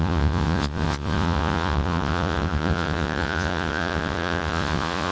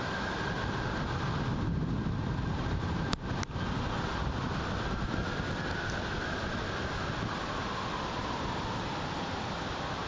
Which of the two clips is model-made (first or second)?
first